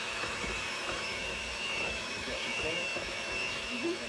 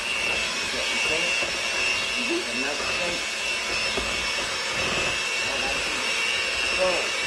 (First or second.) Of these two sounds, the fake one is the first